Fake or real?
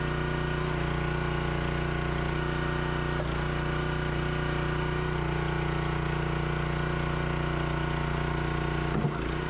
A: real